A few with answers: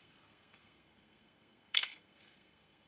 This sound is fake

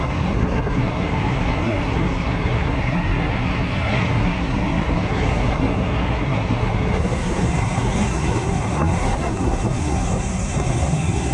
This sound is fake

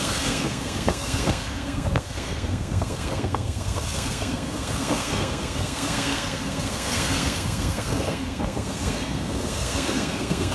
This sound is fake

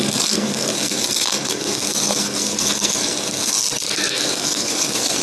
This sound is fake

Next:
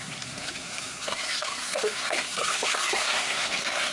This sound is fake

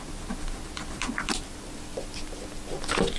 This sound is real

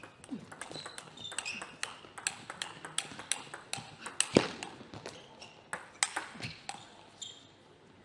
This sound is real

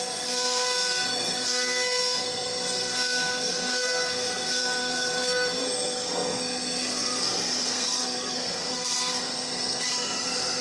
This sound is fake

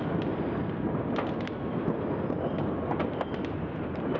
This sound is real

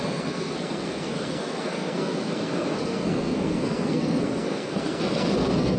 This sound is fake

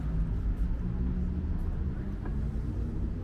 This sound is real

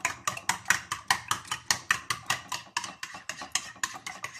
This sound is real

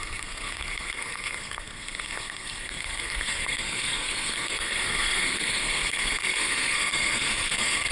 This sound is fake